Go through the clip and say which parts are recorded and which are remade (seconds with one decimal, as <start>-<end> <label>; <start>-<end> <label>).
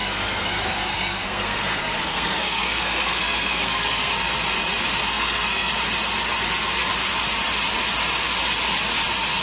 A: 0.0-4.1 remade; 4.1-5.0 recorded; 5.0-5.7 remade; 5.7-9.4 recorded